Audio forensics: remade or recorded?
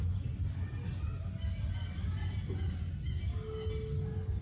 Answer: recorded